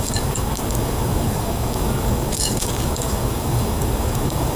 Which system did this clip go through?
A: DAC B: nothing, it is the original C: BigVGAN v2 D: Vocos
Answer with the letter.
A